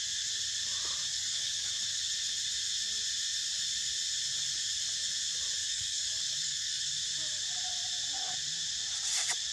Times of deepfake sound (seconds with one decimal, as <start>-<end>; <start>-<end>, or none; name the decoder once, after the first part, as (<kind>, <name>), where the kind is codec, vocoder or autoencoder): 1.1-1.7 (codec, DAC); 5.6-6.8